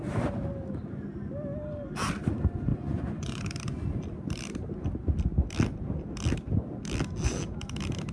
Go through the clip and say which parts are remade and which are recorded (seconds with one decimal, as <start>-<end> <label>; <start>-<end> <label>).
0.0-2.7 recorded; 2.7-3.4 remade; 3.4-8.1 recorded